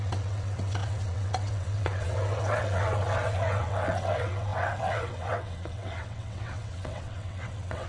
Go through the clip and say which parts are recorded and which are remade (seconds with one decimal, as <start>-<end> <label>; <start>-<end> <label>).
0.0-7.9 remade